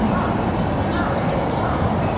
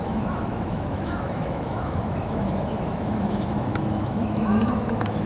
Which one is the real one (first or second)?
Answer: first